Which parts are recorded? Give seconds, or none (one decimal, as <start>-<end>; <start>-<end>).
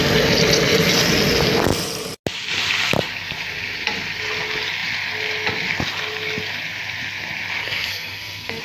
0.0-7.6